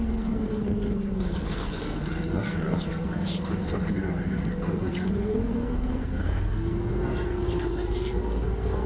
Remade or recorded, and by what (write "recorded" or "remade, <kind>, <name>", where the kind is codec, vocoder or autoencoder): remade, codec, SNAC